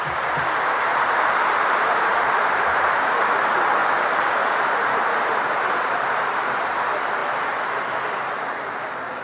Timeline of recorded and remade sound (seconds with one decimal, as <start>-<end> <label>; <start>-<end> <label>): 0.0-3.8 remade; 3.8-4.3 recorded; 4.3-7.2 remade; 7.2-8.2 recorded; 8.2-9.2 remade